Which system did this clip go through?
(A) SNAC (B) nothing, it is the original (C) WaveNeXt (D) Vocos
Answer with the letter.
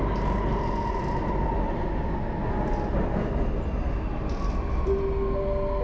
B